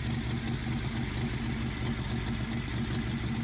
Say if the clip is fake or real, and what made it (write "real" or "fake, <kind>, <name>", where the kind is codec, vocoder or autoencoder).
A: real